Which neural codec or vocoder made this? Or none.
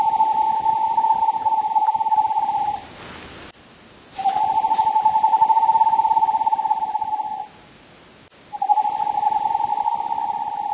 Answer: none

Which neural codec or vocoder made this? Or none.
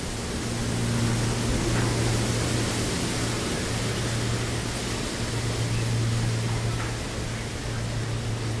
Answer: none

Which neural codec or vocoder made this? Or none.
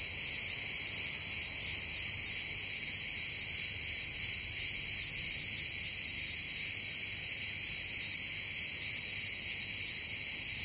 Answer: none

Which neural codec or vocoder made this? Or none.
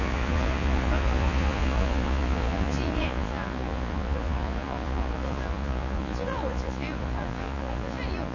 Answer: vocoder, Vocos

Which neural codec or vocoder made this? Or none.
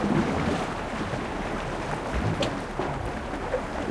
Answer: none